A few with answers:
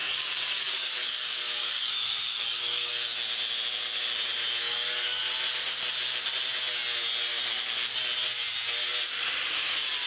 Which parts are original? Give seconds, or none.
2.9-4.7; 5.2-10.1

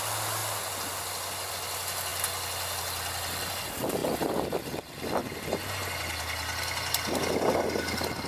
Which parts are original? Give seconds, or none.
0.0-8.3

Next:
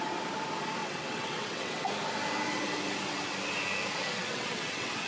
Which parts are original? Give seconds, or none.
0.0-0.8; 1.9-4.2

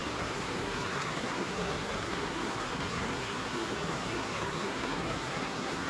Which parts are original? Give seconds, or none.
none